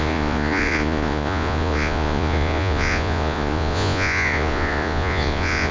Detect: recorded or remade remade